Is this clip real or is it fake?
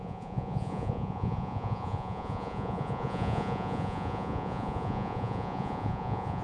fake